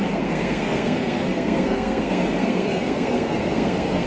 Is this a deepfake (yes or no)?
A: yes